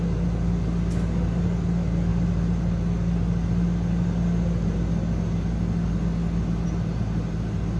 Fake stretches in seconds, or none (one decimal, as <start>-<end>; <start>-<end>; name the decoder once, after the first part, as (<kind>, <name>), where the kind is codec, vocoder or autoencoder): none